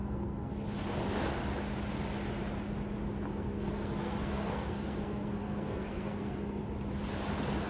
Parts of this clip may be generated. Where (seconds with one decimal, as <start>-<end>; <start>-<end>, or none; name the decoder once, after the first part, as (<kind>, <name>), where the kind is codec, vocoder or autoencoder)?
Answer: 0.0-0.5 (codec, SNAC); 3.3-6.6